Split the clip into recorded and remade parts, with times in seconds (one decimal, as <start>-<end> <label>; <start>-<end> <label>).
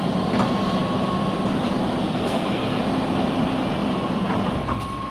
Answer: 0.0-2.0 recorded; 2.0-2.8 remade; 2.8-5.1 recorded